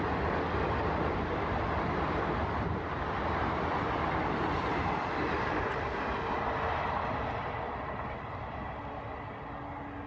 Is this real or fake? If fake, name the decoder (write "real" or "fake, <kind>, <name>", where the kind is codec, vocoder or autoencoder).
real